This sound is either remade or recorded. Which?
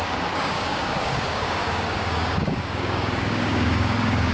remade